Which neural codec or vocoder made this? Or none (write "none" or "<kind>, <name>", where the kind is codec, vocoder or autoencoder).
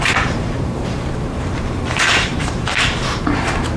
vocoder, BigVGAN v2